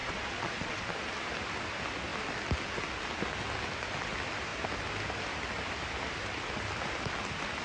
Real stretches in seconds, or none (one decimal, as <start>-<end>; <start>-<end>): 1.0-7.6